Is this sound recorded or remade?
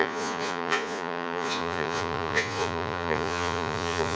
remade